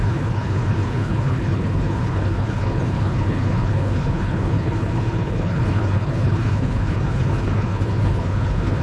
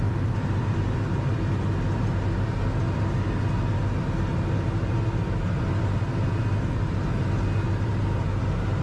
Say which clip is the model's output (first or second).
first